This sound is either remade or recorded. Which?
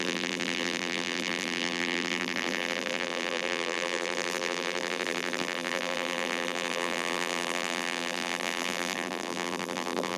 remade